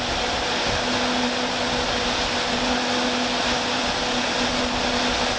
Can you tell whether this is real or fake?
real